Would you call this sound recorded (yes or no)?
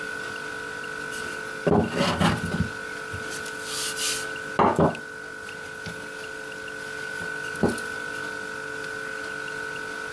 yes